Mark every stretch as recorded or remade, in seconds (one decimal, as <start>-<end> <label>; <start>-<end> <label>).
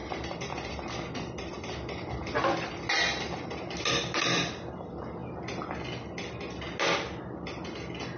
0.0-2.8 remade; 2.8-8.2 recorded